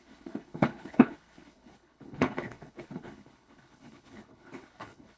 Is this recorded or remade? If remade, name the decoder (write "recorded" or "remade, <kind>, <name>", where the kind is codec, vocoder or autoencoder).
remade, codec, HILCodec